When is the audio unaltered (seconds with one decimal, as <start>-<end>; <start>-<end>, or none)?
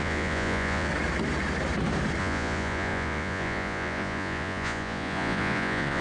0.9-2.2